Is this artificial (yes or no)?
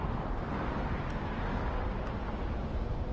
no